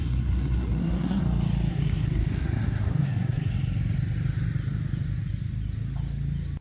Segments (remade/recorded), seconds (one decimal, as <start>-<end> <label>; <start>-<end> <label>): 0.0-1.2 remade; 1.2-1.7 recorded; 1.7-3.5 remade; 3.5-6.6 recorded